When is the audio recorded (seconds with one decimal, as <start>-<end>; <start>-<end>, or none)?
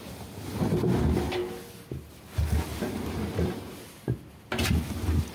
0.0-5.3